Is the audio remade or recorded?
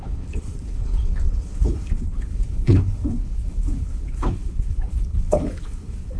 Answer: remade